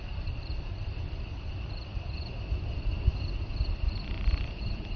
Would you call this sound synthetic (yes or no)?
yes